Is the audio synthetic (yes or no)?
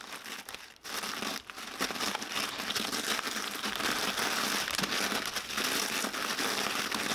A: no